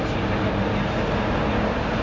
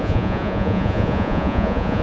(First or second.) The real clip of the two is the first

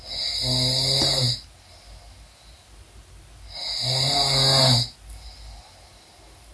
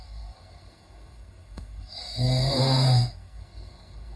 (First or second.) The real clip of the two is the first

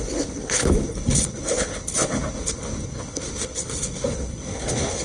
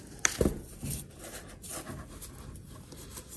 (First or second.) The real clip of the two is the second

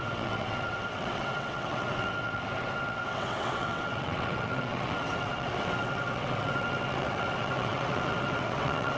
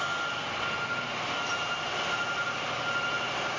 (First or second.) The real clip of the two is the second